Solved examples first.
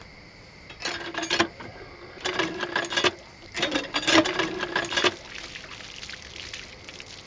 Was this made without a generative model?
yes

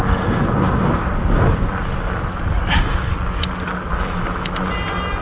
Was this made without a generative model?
yes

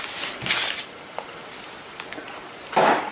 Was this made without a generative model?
yes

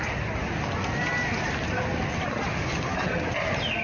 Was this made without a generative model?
yes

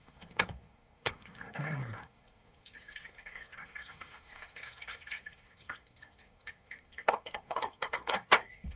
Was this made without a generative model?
no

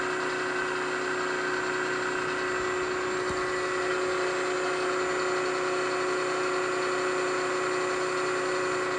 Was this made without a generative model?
yes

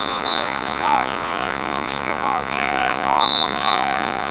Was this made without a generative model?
no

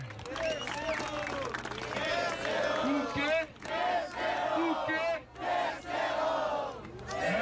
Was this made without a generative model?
yes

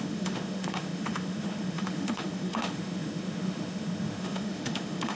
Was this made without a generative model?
no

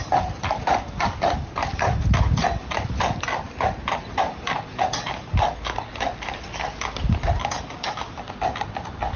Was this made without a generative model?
yes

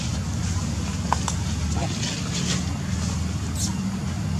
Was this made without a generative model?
yes